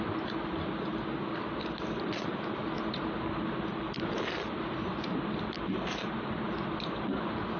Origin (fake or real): real